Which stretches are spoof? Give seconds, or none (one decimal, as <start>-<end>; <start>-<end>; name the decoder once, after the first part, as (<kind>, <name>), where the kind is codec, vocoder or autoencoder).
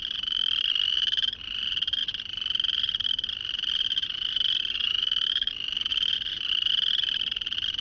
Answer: none